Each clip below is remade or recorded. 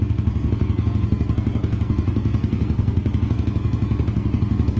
remade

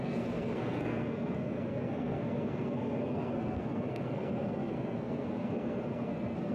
remade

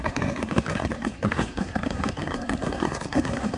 remade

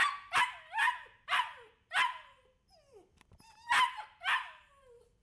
recorded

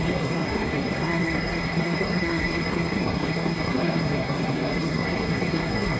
remade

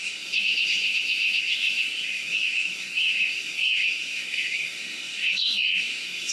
remade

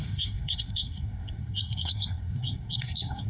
remade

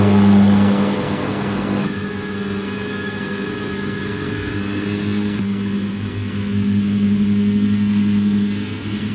remade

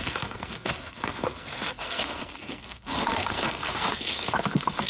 remade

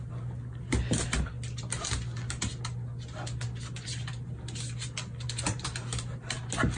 recorded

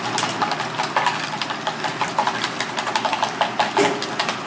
recorded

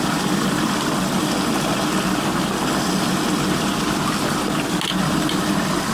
recorded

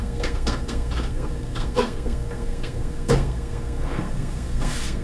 remade